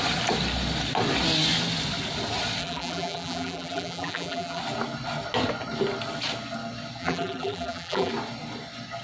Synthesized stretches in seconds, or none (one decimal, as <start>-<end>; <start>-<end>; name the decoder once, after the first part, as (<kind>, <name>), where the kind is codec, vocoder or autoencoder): 2.6-4.6 (vocoder, BigVGAN v2); 7.0-8.1